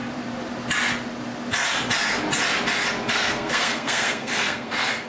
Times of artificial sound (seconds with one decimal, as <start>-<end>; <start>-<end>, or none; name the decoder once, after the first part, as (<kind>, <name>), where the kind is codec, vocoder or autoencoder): 3.1-5.1 (codec, SNAC)